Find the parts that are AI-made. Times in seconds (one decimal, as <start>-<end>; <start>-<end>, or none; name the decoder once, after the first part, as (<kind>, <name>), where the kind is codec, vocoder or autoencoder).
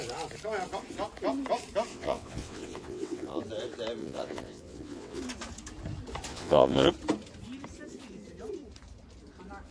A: 1.9-3.4 (vocoder, WaveNeXt); 4.0-5.2; 6.3-6.9